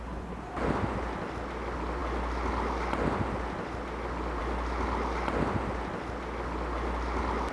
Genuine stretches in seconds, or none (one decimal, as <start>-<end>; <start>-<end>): 0.0-7.5

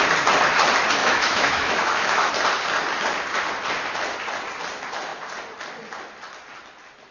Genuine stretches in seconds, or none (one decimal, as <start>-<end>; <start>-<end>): 0.0-1.0; 2.3-7.1

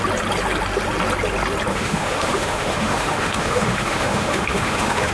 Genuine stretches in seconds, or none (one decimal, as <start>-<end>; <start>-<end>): 0.0-1.7

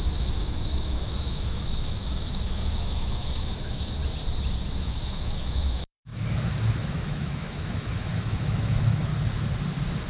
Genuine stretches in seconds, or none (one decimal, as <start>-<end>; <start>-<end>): 4.0-4.7; 6.1-6.9; 9.1-10.1

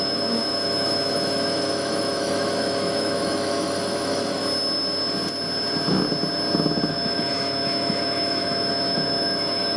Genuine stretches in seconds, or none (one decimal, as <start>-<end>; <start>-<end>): 4.4-6.9

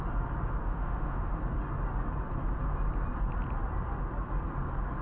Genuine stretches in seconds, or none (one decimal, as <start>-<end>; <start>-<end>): 0.0-0.6; 1.4-5.0

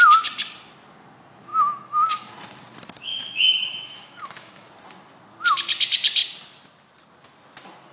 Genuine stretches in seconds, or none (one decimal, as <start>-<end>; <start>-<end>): 0.0-1.5; 2.3-3.1; 4.7-7.9

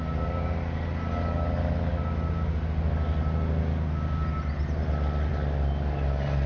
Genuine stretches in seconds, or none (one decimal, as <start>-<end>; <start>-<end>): 0.0-6.5